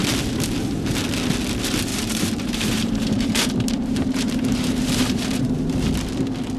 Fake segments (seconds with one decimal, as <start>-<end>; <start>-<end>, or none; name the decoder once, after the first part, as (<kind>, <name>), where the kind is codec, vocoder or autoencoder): 1.9-5.5 (vocoder, BigVGAN v2)